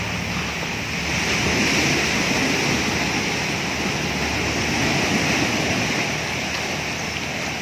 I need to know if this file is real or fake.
real